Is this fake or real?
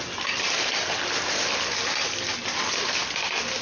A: real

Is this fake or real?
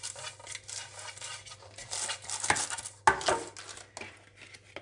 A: real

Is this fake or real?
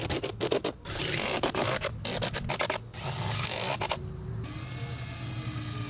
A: real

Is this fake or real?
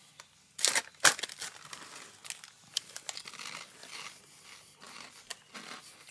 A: real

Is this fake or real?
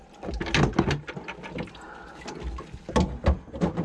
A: real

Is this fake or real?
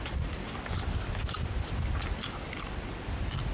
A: real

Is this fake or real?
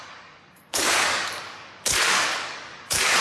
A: fake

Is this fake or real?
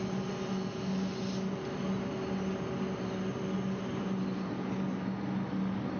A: real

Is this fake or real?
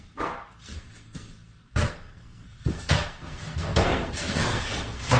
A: fake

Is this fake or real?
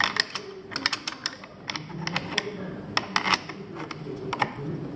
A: real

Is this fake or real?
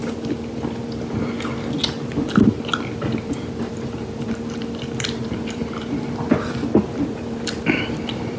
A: fake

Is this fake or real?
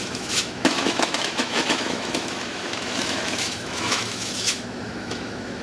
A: fake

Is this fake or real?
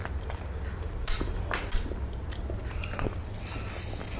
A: real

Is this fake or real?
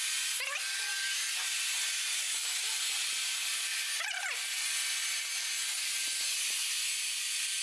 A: real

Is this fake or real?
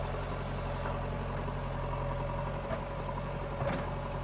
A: real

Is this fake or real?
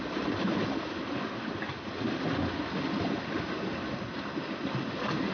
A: real